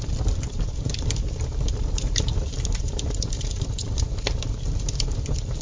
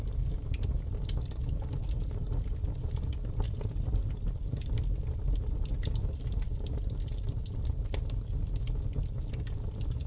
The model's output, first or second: first